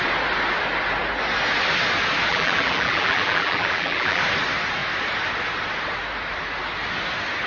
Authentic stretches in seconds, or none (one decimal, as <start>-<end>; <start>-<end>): 0.0-2.3; 4.2-7.5